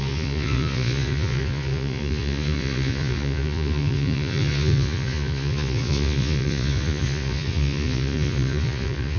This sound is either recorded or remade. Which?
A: remade